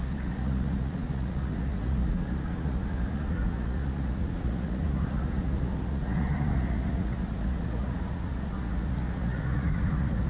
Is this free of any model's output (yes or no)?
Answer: no